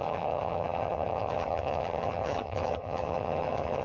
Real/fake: fake